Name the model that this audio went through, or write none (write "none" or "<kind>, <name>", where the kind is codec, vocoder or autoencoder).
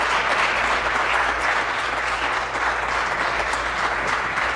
none